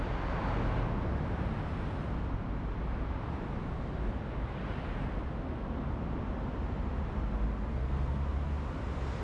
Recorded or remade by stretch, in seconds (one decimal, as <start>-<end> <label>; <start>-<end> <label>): 0.0-7.7 recorded; 7.7-8.2 remade; 8.2-9.2 recorded